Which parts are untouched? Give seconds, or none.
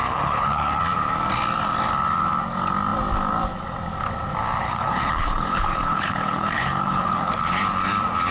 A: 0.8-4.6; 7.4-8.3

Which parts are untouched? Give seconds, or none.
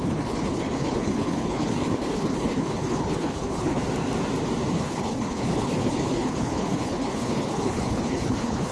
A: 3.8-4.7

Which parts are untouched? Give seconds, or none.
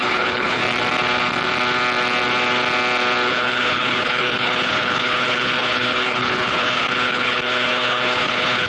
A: 0.6-3.3